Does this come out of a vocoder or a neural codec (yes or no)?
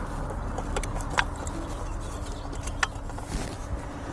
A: no